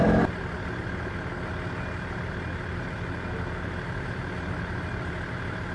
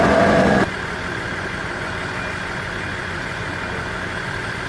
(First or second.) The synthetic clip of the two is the second